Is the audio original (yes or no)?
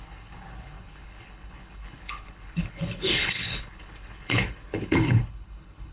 no